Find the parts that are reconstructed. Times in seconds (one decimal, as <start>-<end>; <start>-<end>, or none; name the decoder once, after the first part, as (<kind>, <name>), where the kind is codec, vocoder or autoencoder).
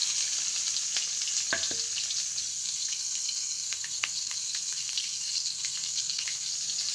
2.5-6.5 (codec, SNAC)